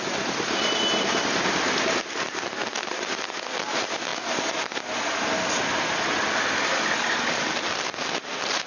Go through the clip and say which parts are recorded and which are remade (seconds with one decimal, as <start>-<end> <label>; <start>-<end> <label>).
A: 0.0-8.7 recorded